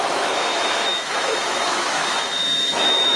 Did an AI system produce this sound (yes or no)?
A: yes